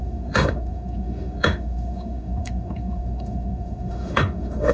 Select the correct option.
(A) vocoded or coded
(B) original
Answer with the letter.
A